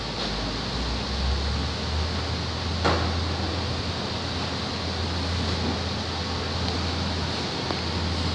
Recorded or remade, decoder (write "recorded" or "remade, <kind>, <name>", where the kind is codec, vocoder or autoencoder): recorded